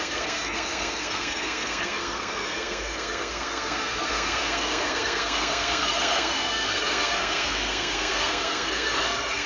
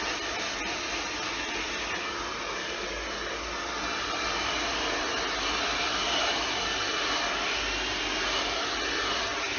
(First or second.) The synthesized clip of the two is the first